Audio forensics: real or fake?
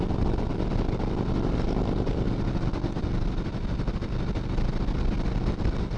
real